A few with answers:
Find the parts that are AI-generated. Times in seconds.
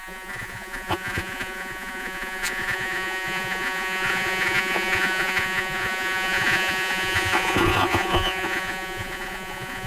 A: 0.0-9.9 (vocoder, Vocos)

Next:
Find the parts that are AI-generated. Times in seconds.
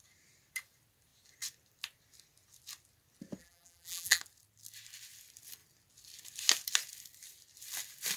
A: 3.4-4.2 (vocoder, BigVGAN v2)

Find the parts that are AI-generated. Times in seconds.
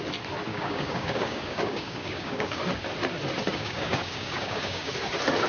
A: 0.5-2.6 (codec, DAC); 3.5-4.9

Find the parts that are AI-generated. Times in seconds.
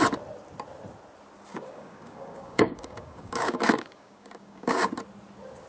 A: 1.5-4.9 (codec, DAC)